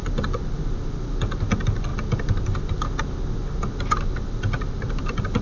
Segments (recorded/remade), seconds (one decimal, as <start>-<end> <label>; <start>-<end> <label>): 0.0-5.4 recorded